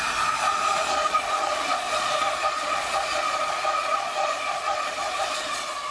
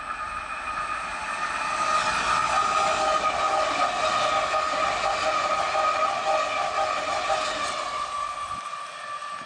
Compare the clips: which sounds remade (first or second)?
first